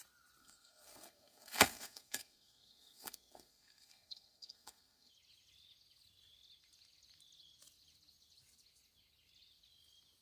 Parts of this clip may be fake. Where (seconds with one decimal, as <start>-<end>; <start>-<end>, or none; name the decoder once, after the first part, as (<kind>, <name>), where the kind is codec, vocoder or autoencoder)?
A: 0.4-5.1 (codec, SNAC)